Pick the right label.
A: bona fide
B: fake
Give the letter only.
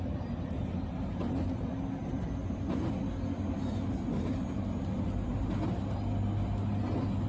A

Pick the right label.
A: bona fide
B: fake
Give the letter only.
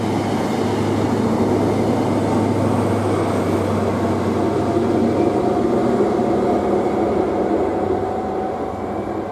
A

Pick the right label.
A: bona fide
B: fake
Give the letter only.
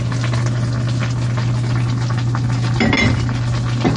A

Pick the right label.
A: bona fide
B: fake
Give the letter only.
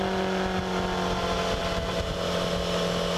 A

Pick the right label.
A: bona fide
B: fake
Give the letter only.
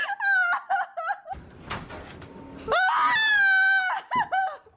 A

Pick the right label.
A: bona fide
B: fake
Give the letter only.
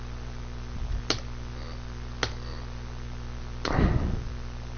A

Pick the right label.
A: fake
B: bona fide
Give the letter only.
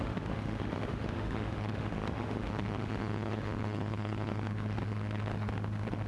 A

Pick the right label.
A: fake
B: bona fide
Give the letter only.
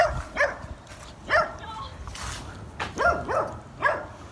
B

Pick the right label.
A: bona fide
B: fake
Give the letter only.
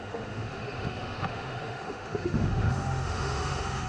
B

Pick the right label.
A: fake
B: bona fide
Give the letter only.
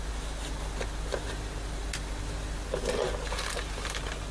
B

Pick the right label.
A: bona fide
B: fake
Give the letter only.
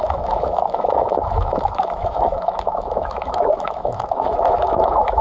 B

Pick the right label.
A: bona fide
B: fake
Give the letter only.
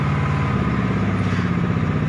A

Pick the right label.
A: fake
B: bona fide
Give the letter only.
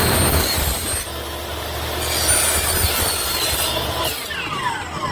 B